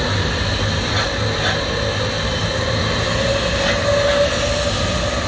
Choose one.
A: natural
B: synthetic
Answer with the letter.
A